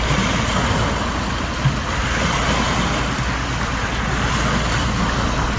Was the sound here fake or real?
real